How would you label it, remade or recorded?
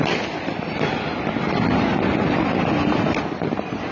recorded